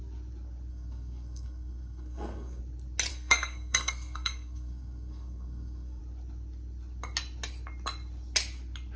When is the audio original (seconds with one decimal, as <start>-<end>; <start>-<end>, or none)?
0.0-0.7; 2.6-3.1; 6.0-9.0